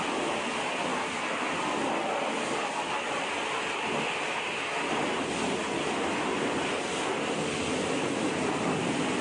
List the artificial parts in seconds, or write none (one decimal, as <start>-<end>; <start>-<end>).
none